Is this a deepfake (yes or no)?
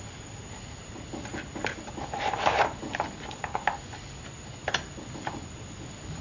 no